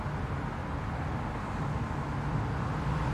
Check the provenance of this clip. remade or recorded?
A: recorded